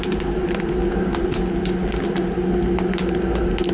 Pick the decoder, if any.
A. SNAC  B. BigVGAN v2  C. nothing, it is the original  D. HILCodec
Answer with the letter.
C